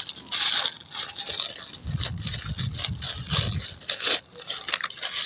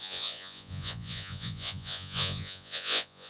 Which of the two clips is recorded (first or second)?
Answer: first